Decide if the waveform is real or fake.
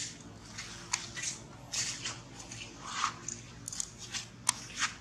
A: real